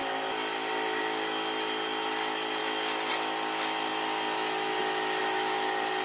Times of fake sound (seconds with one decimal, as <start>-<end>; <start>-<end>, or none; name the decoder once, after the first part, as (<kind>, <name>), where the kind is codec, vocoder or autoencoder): none